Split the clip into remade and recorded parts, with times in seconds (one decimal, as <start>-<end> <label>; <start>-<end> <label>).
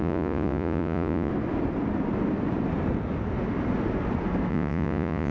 0.0-1.3 remade; 1.3-4.5 recorded; 4.5-5.3 remade